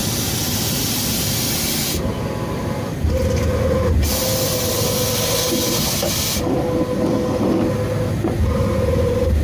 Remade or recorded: recorded